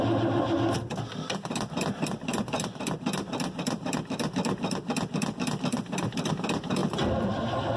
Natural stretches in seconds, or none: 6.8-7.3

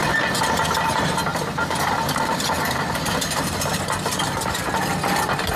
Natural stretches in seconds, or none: 0.0-1.3; 3.8-5.6

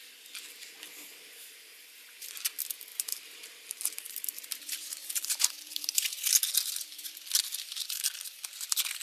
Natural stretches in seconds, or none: 0.0-2.9; 5.8-7.5; 8.1-9.0

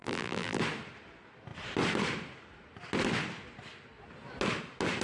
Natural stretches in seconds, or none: 0.6-5.0

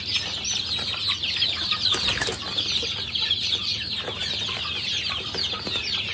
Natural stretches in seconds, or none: 0.0-1.0; 4.7-6.1

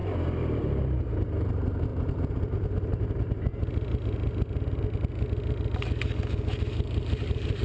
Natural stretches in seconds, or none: 3.5-7.0